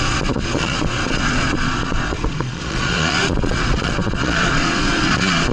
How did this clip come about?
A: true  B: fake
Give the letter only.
B